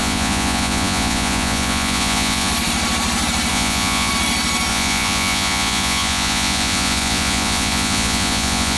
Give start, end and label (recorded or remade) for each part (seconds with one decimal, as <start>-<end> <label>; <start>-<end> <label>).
0.0-2.5 remade; 2.5-3.5 recorded; 3.5-4.1 remade; 4.1-4.7 recorded; 4.7-8.8 remade